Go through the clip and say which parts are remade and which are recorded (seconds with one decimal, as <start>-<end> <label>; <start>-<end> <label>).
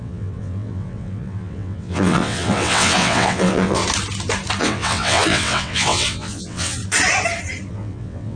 0.0-3.8 remade; 3.8-4.6 recorded; 4.6-6.8 remade; 6.8-7.7 recorded; 7.7-8.4 remade